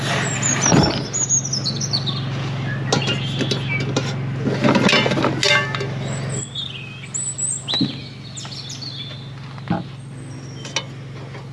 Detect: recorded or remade recorded